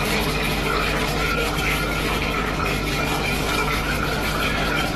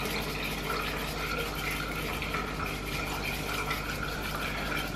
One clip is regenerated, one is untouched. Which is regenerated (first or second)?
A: first